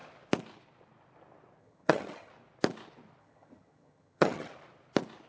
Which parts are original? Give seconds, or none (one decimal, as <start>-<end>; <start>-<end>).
0.0-1.6; 2.3-3.2; 4.5-5.3